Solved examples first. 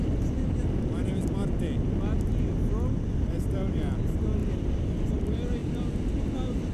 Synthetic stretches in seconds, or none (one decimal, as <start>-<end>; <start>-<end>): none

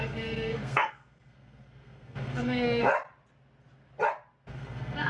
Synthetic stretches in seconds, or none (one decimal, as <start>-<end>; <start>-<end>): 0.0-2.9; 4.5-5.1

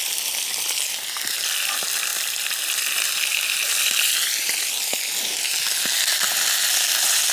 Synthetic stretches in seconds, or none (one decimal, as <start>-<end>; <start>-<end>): none

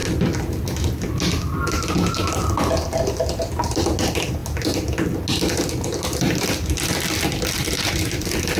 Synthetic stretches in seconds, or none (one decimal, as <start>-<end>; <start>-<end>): none